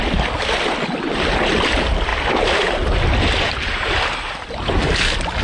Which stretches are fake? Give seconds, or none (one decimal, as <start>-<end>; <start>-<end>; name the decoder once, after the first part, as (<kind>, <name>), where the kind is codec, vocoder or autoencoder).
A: none